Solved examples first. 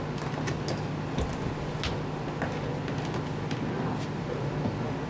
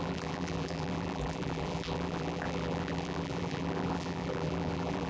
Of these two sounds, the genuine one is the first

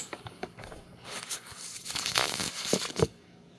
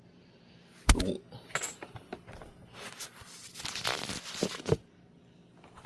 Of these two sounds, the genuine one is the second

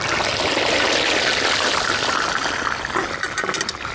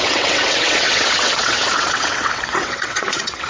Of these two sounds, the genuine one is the first